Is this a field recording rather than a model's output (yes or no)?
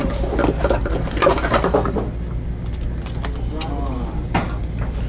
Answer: yes